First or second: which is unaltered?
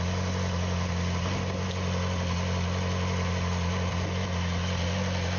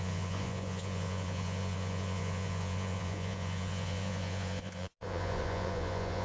first